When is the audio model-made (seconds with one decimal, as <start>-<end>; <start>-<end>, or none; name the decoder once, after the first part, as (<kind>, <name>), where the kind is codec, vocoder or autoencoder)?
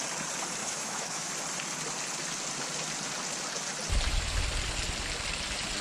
0.6-1.3 (autoencoder, DAC-VAE)